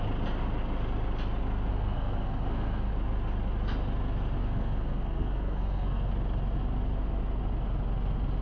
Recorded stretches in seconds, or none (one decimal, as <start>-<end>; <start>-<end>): 0.0-1.7; 2.9-4.4; 6.1-8.4